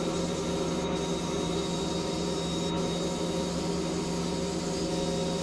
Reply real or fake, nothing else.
real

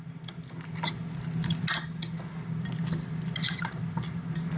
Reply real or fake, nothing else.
real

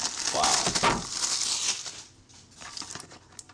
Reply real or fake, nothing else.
real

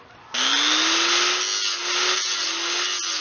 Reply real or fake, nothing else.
real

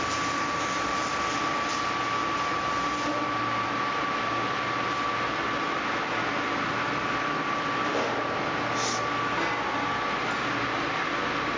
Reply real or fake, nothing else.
real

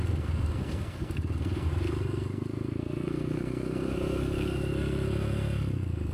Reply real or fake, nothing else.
fake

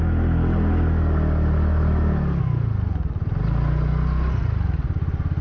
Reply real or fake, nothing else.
real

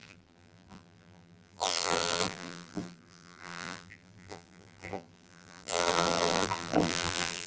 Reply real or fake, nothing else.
fake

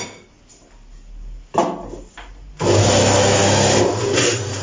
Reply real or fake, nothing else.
real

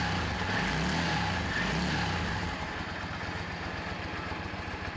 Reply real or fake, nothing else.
real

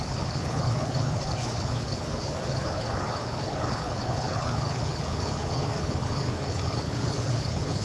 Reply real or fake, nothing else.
fake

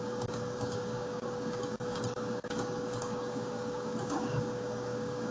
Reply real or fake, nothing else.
fake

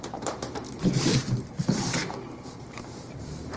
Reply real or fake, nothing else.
fake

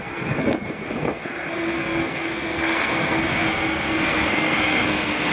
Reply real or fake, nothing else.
fake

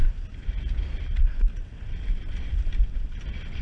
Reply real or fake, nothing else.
real